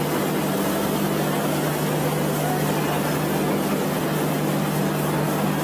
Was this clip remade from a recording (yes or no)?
no